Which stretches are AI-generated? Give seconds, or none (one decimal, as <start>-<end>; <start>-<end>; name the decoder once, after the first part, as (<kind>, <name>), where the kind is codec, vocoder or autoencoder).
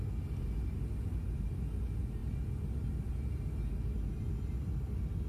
none